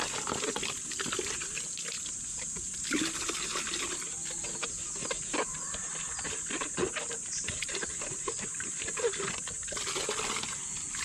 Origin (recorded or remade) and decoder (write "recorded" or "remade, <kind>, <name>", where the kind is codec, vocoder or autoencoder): recorded